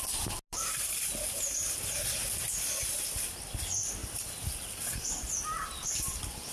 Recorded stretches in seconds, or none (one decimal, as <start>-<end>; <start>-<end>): 0.0-0.5; 2.4-4.0; 5.7-6.5